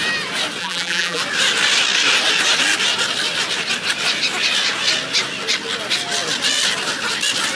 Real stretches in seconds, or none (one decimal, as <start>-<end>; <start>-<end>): 0.0-0.6; 1.2-7.5